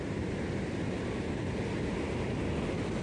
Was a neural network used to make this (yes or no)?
no